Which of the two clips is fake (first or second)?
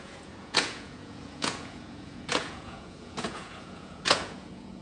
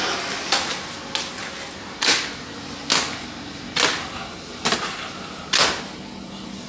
first